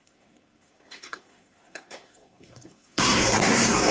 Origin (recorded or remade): remade